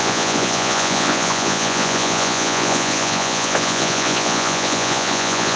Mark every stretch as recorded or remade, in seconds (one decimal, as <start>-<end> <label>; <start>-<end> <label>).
0.0-5.6 remade